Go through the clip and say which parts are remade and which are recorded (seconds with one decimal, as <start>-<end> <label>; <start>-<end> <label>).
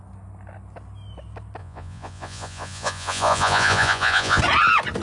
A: 0.0-1.6 recorded; 1.6-4.4 remade; 4.4-5.0 recorded